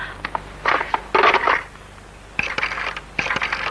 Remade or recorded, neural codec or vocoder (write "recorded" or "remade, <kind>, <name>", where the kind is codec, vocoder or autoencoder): recorded